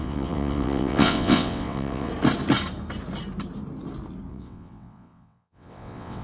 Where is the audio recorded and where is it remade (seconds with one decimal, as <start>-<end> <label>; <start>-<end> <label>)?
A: 0.0-2.1 remade; 2.1-4.3 recorded; 4.3-6.2 remade